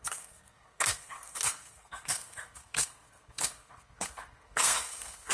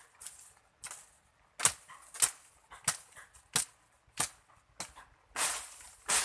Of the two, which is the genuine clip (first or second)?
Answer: second